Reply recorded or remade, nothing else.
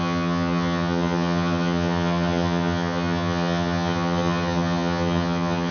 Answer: remade